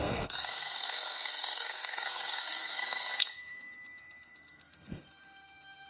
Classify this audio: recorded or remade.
remade